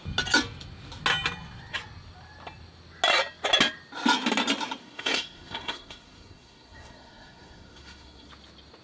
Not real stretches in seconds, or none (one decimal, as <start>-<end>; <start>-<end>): 4.8-8.3